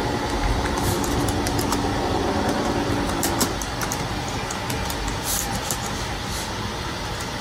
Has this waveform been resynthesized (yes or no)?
no